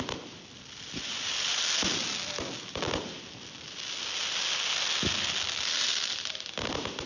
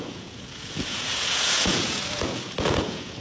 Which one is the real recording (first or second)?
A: first